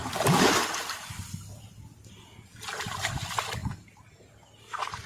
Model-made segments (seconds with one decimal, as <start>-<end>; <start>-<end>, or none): none